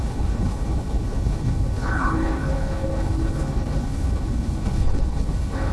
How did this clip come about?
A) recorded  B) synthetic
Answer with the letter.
B